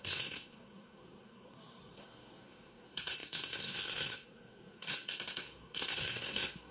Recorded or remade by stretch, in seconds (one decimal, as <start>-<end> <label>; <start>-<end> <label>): 0.0-6.7 remade